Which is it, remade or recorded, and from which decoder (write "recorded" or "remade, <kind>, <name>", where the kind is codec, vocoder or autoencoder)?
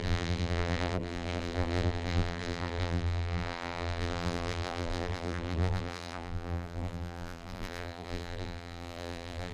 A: remade, vocoder, BigVGAN v2